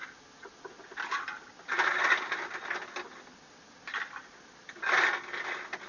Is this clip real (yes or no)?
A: yes